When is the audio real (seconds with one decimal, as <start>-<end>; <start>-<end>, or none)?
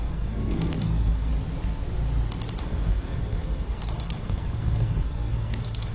1.3-2.6